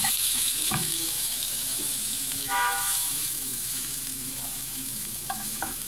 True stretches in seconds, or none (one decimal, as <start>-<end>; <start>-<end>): none